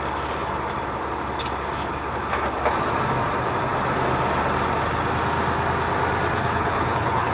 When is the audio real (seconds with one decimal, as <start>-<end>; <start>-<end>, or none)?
0.0-6.4